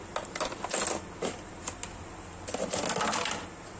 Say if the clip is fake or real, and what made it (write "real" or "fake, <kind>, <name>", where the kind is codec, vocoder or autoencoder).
real